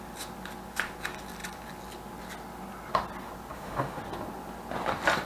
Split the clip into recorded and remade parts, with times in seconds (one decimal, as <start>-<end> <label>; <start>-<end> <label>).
0.0-3.5 recorded; 3.5-4.0 remade; 4.0-5.3 recorded